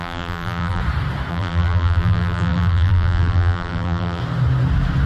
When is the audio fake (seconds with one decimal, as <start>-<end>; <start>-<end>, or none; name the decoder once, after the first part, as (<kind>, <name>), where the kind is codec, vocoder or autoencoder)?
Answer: 0.0-0.8 (vocoder, BigVGAN v2); 1.3-4.2